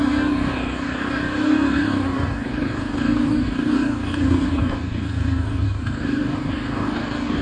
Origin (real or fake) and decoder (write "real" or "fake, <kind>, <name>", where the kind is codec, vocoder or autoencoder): fake, codec, DAC